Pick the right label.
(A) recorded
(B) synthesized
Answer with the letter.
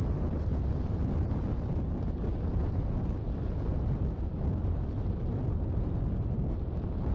A